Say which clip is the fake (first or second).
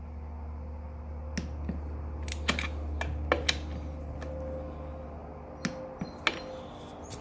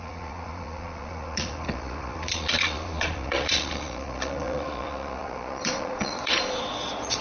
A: second